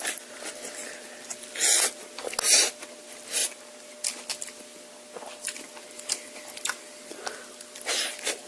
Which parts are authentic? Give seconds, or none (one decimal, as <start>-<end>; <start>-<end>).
0.0-8.5